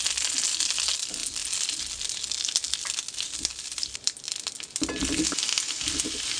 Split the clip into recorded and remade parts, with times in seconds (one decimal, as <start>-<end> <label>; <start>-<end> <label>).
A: 0.0-6.4 recorded